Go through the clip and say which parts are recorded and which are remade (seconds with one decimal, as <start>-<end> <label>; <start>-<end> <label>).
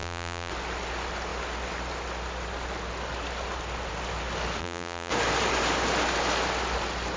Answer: 0.0-0.5 remade; 0.5-4.6 recorded; 4.6-5.1 remade; 5.1-7.2 recorded